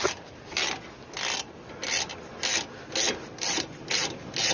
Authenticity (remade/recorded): recorded